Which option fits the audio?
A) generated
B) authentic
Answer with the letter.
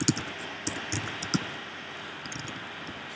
B